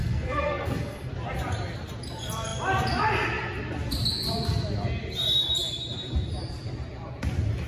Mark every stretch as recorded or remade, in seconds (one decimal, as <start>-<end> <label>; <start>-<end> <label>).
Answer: 0.0-1.1 remade; 1.1-7.7 recorded